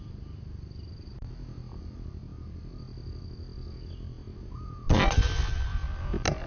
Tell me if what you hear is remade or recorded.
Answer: recorded